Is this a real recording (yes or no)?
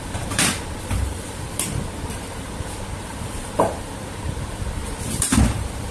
no